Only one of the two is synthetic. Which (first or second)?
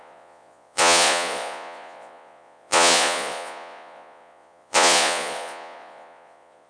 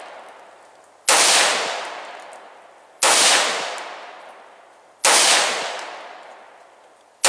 first